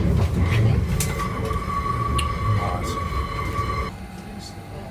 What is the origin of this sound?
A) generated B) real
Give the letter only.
B